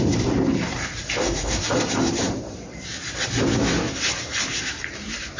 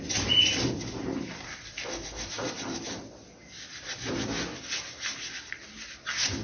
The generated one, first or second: first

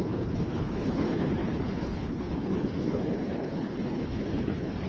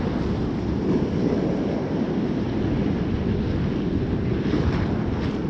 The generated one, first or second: first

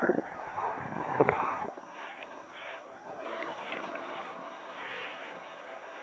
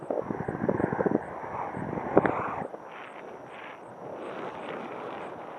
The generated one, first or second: first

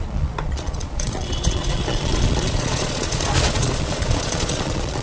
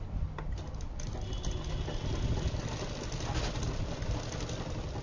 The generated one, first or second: first